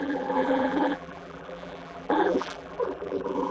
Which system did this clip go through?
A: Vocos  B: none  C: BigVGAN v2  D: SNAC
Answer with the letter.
C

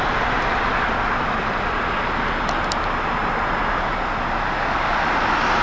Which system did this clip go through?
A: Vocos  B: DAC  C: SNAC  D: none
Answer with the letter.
D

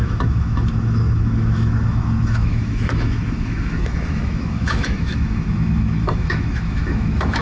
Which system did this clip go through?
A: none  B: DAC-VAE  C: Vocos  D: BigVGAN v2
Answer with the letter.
B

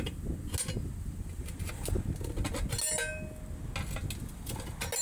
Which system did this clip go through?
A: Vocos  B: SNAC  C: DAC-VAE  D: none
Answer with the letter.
D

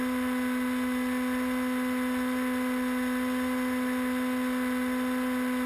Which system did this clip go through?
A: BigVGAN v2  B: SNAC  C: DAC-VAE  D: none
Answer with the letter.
D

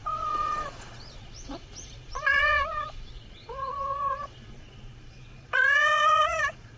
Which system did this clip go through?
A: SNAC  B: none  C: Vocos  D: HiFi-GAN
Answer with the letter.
C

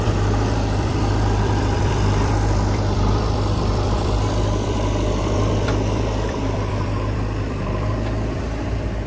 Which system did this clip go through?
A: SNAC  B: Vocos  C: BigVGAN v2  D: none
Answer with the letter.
C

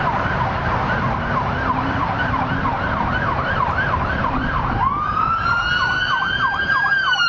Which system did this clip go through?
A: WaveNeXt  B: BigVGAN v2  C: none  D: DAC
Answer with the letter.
B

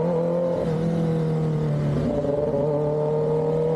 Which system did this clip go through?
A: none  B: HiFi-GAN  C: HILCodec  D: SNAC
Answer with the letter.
A